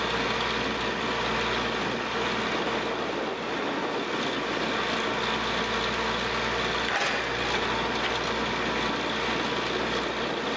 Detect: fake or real real